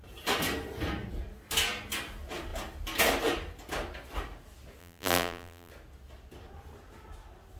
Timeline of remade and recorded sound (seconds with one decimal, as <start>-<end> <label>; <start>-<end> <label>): 0.0-4.8 recorded; 4.8-5.7 remade; 5.7-7.6 recorded